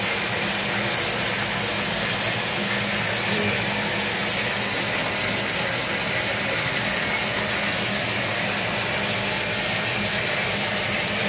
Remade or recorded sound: recorded